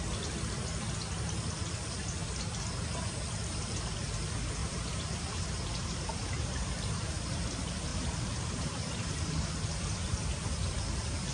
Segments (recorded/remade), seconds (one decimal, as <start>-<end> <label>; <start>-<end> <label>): 0.0-4.6 recorded; 4.6-7.4 remade; 7.4-7.9 recorded; 7.9-9.5 remade; 9.5-11.3 recorded